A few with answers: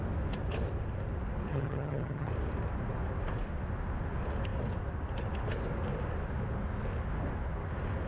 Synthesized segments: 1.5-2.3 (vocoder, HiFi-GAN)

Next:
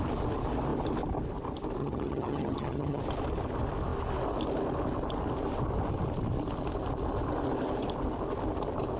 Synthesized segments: 1.8-3.0 (vocoder, HiFi-GAN)

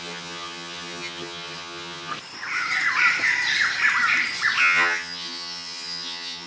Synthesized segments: 0.0-2.1 (vocoder, HiFi-GAN); 4.6-6.5

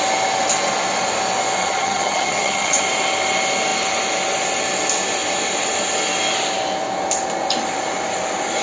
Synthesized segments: 1.6-2.8 (vocoder, HiFi-GAN)

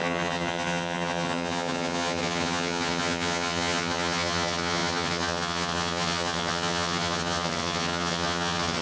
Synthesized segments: 0.0-8.8 (vocoder, HiFi-GAN)

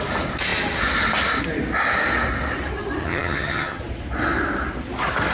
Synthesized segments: 3.0-3.8 (vocoder, HiFi-GAN)

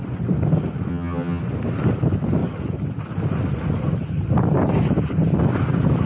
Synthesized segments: 0.9-1.4 (vocoder, HiFi-GAN)

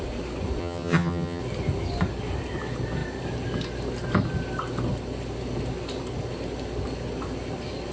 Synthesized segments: 0.6-1.4 (vocoder, HiFi-GAN)